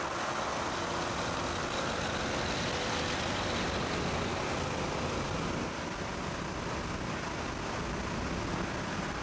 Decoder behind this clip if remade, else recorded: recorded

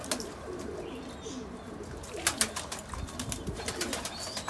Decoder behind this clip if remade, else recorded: recorded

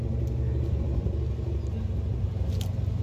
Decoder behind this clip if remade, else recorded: recorded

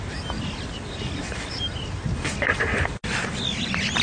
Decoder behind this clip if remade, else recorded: recorded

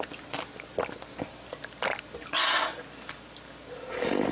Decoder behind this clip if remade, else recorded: recorded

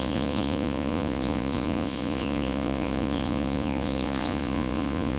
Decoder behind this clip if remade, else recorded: remade, vocoder, Vocos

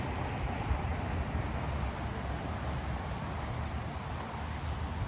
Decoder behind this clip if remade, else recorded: recorded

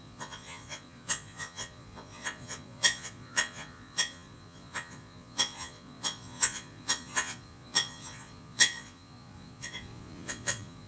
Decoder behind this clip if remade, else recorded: remade, vocoder, Vocos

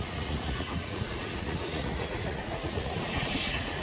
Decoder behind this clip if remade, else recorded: remade, vocoder, Vocos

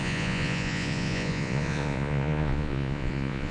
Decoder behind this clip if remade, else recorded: remade, vocoder, Vocos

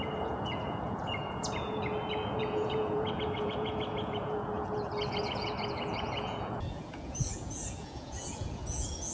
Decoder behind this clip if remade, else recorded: remade, vocoder, Vocos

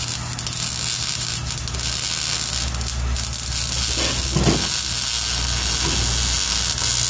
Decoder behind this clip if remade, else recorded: recorded